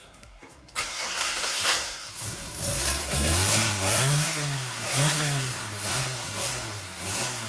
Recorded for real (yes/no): no